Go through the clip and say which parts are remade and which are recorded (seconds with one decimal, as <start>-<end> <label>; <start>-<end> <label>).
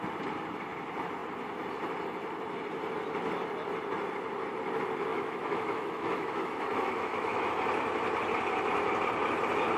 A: 0.0-5.1 recorded; 5.1-7.5 remade; 7.5-9.8 recorded